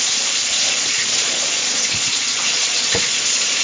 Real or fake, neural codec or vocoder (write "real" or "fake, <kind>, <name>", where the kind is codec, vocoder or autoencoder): fake, vocoder, Vocos